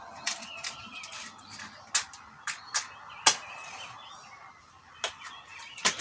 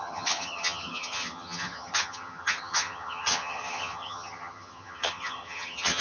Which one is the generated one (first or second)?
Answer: second